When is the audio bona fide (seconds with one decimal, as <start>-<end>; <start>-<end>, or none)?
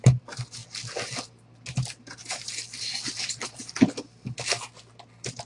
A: 0.0-5.5